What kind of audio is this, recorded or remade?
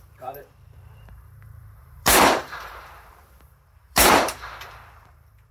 remade